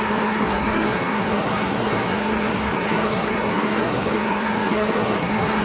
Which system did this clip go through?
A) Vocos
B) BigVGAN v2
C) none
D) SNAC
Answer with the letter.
D